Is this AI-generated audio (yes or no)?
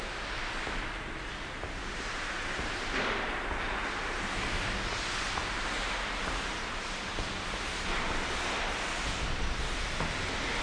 no